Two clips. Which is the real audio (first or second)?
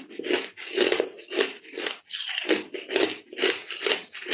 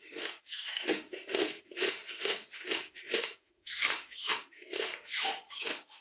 first